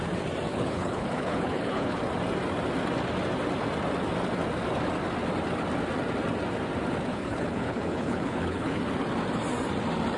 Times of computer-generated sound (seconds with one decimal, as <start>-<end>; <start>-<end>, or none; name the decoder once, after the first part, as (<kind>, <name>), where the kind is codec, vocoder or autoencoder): 0.5-2.0 (codec, HILCodec); 7.1-8.8